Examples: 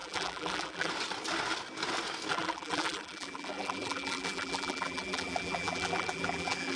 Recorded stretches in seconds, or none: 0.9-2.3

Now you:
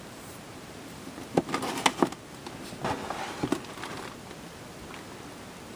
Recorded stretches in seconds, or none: 0.0-5.8

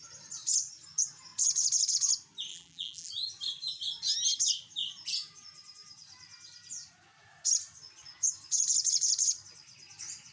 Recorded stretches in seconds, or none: 0.0-2.5; 3.1-10.3

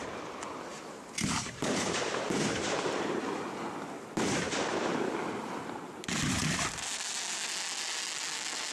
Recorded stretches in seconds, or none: 0.0-0.7; 3.4-8.7

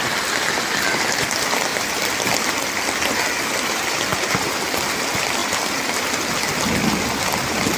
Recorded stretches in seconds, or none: 0.0-1.7; 3.2-4.1; 5.0-5.4; 6.5-7.8

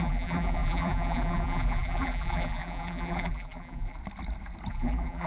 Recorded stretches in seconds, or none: 4.0-4.7

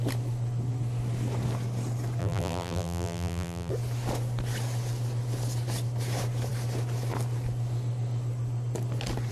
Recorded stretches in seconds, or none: 0.0-2.2; 3.7-9.3

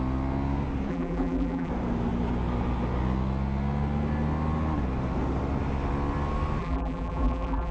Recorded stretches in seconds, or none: 0.0-0.9; 1.7-6.6